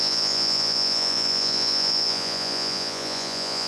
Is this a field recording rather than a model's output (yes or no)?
no